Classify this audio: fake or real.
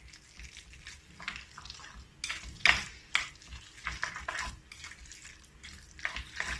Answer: real